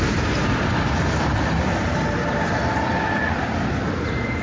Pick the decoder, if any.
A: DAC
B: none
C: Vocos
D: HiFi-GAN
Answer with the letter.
B